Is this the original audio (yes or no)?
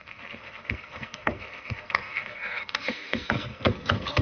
no